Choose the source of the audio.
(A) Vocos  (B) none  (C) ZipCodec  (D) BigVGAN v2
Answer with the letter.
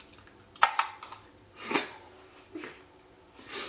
B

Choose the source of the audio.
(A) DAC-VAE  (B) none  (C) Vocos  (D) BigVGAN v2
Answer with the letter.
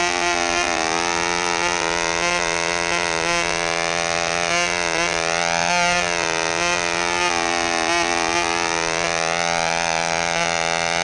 B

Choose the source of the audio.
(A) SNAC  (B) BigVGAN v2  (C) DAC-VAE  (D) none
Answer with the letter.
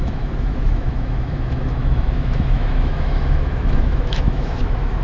C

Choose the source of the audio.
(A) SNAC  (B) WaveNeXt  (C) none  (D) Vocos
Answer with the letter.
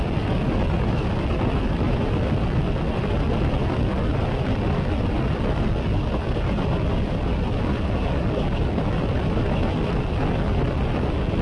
C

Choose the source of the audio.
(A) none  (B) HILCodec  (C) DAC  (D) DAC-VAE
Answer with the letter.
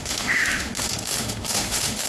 D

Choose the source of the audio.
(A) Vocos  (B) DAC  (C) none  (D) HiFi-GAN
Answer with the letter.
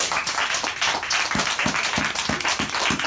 C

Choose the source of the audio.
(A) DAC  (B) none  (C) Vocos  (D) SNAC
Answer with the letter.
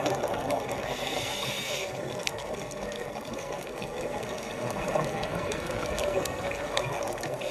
D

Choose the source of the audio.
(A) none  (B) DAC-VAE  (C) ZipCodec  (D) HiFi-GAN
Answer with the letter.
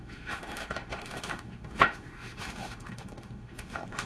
B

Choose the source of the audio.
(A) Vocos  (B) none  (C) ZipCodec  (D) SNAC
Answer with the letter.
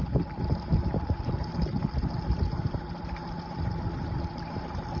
B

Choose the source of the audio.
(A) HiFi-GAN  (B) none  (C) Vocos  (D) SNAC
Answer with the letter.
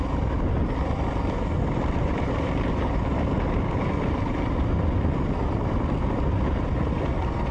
B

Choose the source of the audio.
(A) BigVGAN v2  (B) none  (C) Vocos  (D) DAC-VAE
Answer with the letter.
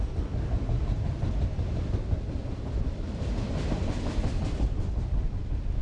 A